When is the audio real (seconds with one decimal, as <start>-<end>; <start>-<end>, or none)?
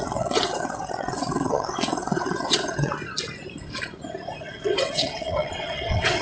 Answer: 2.9-4.4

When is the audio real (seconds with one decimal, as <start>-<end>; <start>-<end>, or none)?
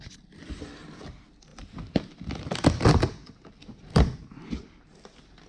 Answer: 0.0-5.5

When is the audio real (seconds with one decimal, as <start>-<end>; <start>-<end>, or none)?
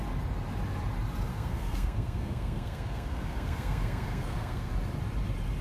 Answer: 0.0-1.3; 4.7-5.6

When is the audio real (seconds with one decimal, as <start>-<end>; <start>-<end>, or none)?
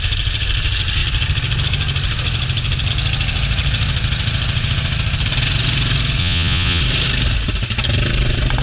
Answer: 0.0-6.2; 6.8-8.6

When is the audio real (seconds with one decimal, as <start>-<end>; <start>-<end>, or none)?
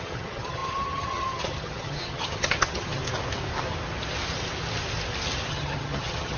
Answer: 3.0-5.5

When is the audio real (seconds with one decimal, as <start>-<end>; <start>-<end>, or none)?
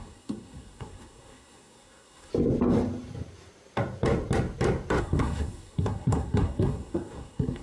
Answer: 2.3-5.0